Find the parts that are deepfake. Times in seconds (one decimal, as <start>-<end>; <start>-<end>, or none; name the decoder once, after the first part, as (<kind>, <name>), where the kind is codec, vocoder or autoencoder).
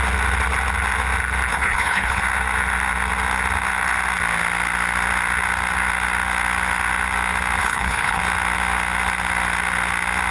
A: 1.5-2.2 (codec, HILCodec); 7.6-8.2